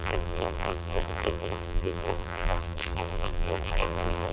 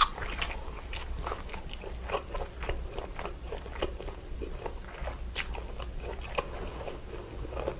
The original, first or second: second